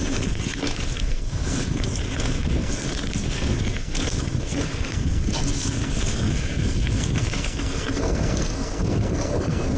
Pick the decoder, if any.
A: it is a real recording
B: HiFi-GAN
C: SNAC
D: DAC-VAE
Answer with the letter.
C